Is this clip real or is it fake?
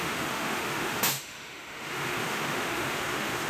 fake